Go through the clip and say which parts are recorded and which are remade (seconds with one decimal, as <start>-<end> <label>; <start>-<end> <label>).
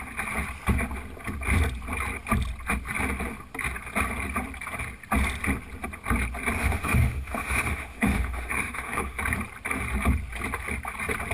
0.0-6.6 recorded; 6.6-9.2 remade; 9.2-11.3 recorded